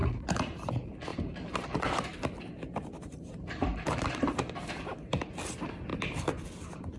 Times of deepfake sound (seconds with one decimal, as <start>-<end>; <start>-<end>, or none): 0.0-0.7; 1.1-5.3